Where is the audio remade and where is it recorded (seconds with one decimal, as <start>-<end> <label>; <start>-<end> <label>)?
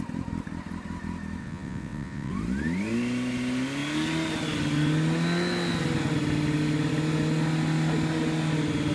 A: 0.0-1.4 recorded; 1.4-2.3 remade; 2.3-8.9 recorded